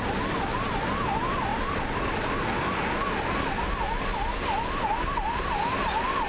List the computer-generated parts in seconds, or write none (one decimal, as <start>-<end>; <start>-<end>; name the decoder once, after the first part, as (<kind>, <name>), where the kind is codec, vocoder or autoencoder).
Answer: none